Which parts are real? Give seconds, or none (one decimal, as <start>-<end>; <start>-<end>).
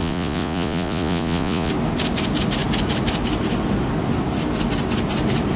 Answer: 1.7-5.6